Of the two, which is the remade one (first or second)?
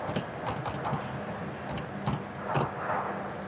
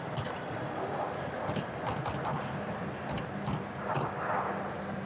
second